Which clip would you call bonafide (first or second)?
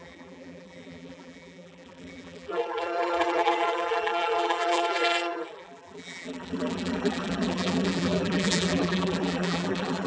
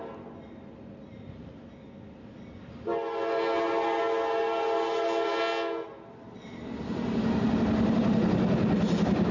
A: second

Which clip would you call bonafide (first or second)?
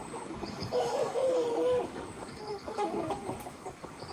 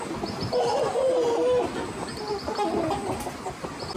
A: second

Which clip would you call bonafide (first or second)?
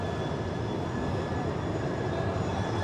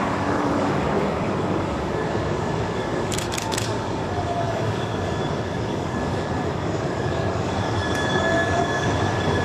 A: first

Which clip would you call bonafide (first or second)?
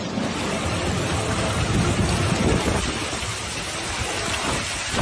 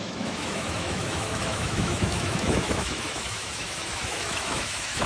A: first